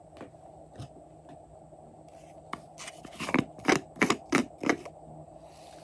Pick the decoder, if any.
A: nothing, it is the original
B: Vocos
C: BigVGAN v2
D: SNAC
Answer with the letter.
A